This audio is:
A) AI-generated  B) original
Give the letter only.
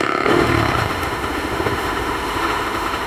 A